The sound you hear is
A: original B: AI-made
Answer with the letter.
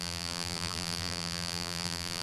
B